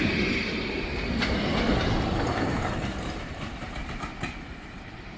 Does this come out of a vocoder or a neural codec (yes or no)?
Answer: yes